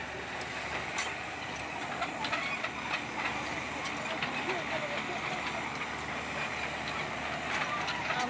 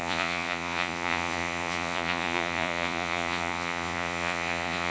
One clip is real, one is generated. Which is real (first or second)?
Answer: first